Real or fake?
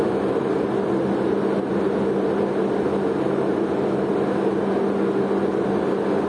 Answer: real